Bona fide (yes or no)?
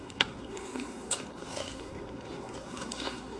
no